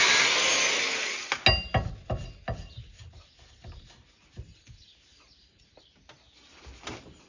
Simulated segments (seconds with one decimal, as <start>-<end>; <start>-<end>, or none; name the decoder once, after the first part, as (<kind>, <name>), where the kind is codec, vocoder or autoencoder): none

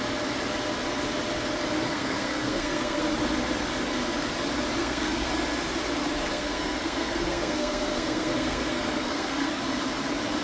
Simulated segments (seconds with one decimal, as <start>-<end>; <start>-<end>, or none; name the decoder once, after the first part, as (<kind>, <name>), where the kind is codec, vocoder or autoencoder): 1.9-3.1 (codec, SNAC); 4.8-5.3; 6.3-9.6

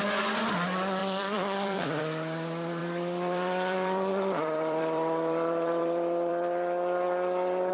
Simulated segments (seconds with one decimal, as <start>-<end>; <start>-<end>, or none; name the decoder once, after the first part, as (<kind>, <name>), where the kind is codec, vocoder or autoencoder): 1.0-2.0 (vocoder, BigVGAN v2); 2.8-7.7

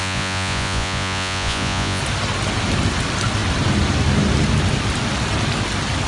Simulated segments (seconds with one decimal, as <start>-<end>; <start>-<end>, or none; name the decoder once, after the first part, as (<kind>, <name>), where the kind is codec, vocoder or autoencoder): 0.0-2.0 (vocoder, Vocos)

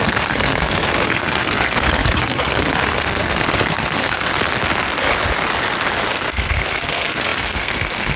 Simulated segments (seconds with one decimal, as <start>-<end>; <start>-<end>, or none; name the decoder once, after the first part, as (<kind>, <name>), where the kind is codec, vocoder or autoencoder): 0.0-4.3 (codec, SNAC); 6.1-8.2

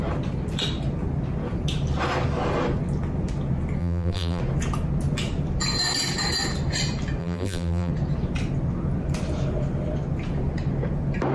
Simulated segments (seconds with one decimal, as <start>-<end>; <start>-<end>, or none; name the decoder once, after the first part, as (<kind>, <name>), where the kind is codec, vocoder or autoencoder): 3.8-4.4 (vocoder, BigVGAN v2); 7.2-7.9

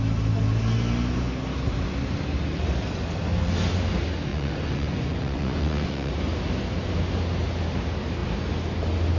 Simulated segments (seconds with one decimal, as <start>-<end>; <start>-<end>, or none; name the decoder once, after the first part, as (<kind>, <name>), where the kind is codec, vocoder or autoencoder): 4.3-6.1 (vocoder, Vocos)